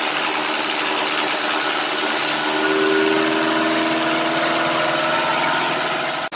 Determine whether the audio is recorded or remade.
recorded